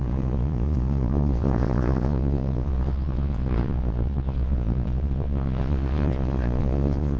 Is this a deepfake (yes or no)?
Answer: yes